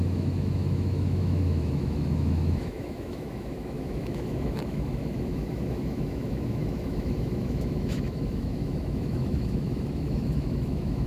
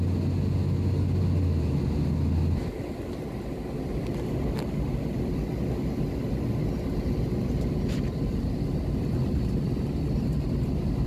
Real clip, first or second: second